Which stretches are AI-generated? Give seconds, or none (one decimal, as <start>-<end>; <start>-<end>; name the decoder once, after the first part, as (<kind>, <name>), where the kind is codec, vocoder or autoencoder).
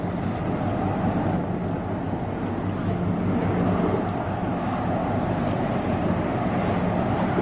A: none